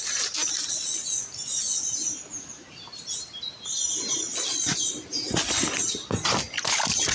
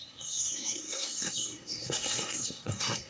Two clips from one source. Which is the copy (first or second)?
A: second